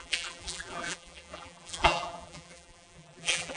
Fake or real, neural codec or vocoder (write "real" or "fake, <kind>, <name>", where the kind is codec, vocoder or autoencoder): fake, vocoder, BigVGAN v2